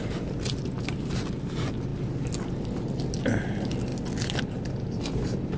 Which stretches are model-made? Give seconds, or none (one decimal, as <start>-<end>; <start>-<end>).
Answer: none